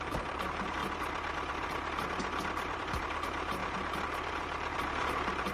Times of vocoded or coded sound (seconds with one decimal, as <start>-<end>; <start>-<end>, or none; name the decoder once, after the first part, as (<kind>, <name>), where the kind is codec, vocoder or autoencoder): 0.0-0.8 (vocoder, BigVGAN v2); 2.8-5.5